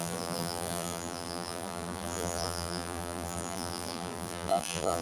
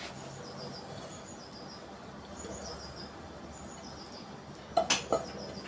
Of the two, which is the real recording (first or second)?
second